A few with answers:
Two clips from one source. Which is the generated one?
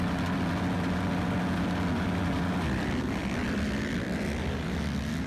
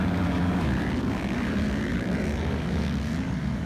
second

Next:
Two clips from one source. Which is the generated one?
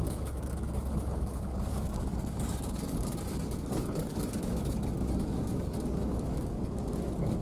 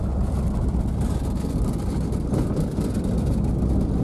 first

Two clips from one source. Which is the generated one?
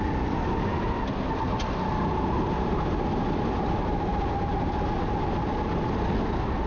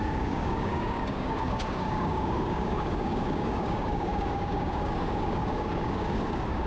second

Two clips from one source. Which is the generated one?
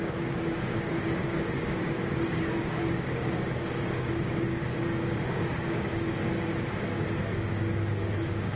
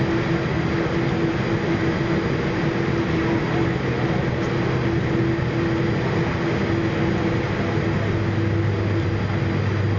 first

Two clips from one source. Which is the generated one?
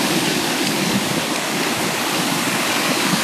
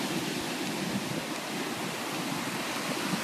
first